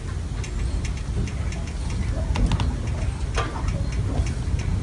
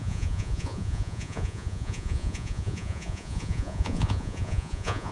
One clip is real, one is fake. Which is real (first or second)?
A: first